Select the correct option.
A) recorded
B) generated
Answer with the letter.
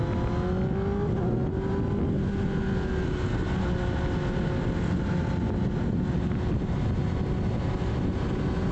A